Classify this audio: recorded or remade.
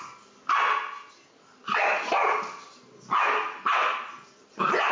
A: recorded